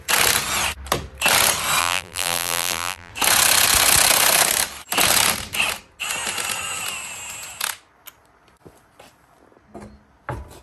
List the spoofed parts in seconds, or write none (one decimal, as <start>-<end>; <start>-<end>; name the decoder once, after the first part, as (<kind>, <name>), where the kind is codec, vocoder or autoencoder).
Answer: 1.8-3.1 (vocoder, BigVGAN v2)